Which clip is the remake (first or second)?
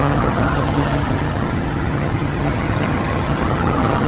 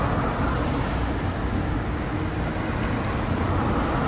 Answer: first